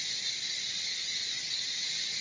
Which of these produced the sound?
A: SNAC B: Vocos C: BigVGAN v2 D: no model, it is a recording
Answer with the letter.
D